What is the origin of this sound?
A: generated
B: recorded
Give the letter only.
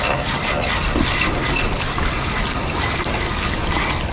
B